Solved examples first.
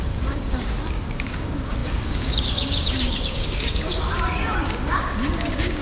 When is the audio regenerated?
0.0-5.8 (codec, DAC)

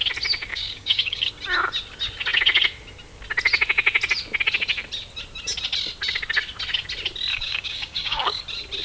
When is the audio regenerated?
0.5-1.3 (codec, DAC); 7.3-8.4

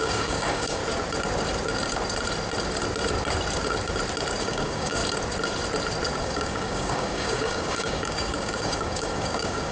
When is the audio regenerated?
0.0-0.8 (codec, DAC); 4.4-5.0; 6.2-9.7

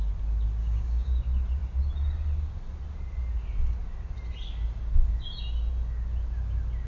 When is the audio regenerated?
0.6-1.1 (codec, DAC)

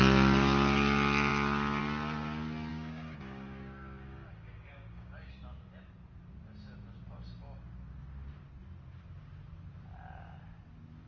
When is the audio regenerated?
2.7-5.3 (codec, DAC)

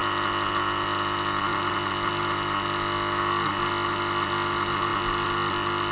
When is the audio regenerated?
none

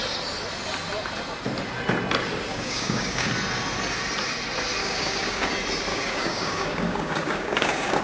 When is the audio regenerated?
2.5-3.3 (codec, DAC); 4.8-5.5; 5.9-8.0

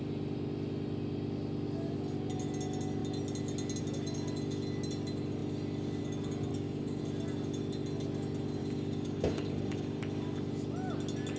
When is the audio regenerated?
6.5-7.0 (codec, DAC); 8.6-10.0